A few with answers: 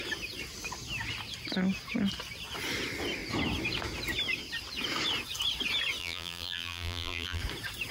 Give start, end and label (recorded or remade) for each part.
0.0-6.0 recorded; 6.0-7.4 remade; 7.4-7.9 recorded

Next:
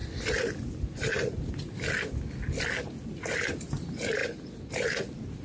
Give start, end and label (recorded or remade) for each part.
0.0-5.4 recorded